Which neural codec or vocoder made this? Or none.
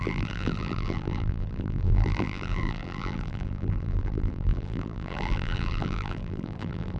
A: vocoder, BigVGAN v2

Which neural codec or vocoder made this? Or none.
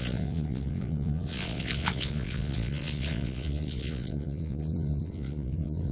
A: vocoder, Vocos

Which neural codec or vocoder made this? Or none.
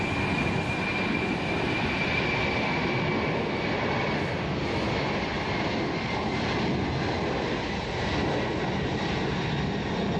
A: none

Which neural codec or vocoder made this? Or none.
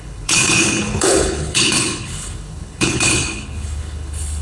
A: codec, HILCodec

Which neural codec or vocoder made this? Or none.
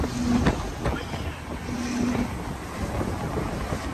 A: none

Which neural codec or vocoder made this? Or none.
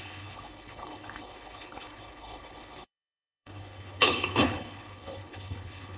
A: codec, HILCodec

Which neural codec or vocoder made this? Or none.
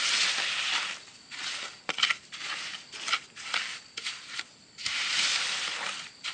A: none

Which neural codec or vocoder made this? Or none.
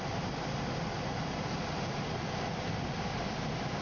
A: none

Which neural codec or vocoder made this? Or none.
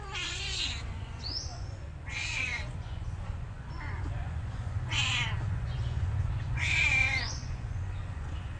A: vocoder, Vocos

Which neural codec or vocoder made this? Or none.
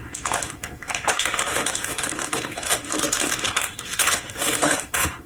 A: autoencoder, DAC-VAE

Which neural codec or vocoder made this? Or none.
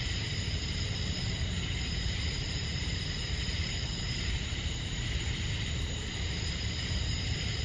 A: vocoder, BigVGAN v2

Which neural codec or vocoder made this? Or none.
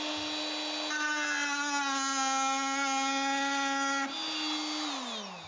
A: none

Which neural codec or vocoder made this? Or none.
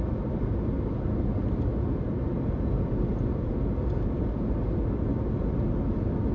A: none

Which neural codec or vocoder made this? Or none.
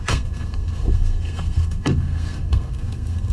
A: codec, SNAC